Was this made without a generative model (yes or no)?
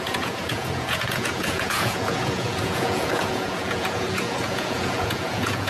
no